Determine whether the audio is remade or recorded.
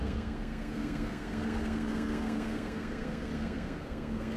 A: remade